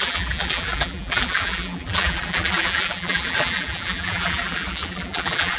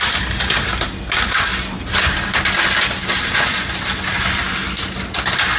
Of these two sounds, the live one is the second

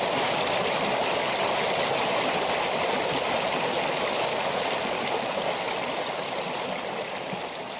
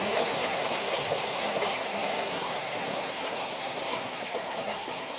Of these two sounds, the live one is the first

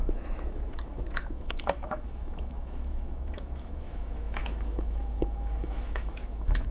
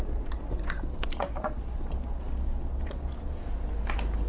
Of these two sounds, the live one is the second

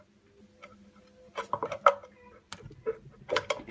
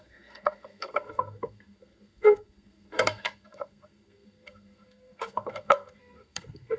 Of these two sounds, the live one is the first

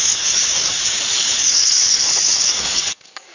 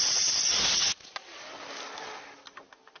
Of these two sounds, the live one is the second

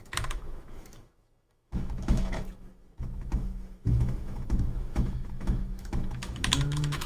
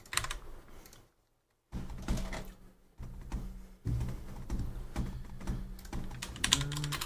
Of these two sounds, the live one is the second